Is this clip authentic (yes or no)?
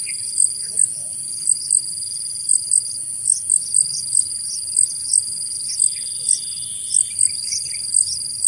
yes